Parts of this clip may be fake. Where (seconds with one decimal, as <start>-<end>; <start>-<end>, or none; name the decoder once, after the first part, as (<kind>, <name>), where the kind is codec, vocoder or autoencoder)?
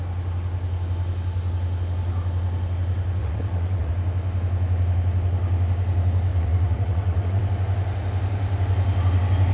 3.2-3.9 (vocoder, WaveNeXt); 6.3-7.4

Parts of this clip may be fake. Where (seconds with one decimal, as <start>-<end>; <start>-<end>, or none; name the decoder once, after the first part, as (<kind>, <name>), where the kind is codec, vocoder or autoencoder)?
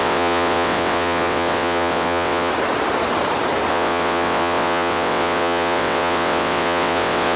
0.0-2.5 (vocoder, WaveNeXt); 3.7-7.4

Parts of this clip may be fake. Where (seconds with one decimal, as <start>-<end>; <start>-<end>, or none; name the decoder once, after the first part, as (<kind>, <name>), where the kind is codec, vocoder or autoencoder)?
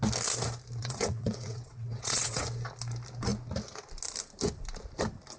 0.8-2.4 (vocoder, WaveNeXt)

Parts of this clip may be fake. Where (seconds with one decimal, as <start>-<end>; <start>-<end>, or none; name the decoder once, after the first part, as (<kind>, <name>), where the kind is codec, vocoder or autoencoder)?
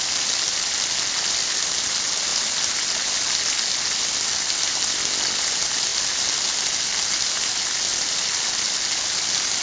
none